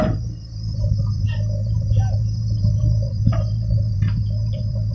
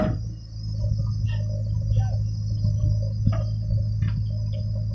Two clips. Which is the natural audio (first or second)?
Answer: second